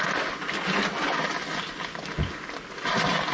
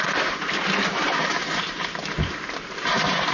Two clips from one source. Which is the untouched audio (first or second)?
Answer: first